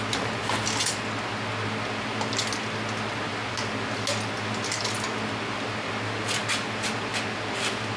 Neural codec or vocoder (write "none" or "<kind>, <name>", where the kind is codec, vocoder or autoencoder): none